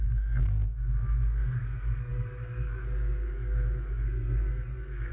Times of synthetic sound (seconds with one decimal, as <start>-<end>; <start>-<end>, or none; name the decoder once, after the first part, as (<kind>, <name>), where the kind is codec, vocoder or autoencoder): 0.0-5.1 (codec, SNAC)